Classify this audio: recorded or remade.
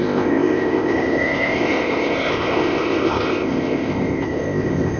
remade